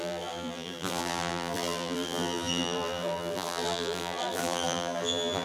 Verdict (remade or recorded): remade